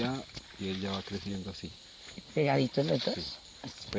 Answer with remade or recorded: recorded